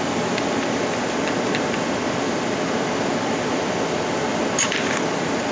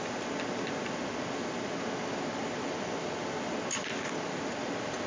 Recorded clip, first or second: second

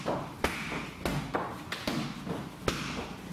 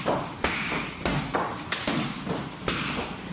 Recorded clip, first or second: first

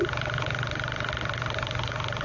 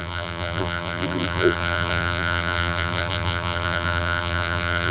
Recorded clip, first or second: first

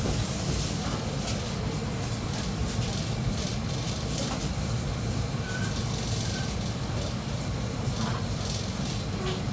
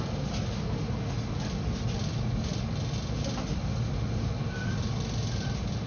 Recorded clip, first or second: second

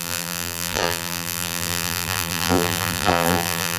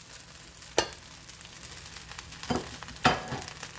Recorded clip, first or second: second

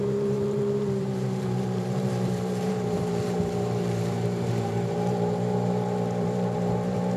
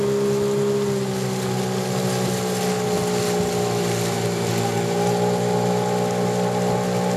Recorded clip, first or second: second